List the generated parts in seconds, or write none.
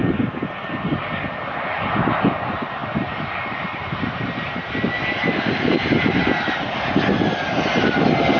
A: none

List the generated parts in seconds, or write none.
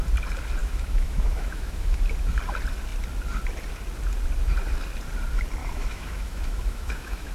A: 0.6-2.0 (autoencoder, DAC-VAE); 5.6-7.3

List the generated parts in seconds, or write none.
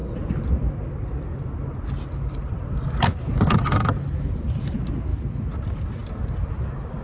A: none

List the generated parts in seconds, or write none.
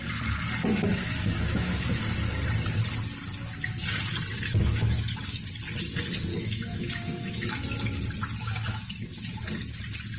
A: 0.7-2.0 (autoencoder, DAC-VAE); 4.3-5.0; 6.3-7.5; 8.4-9.1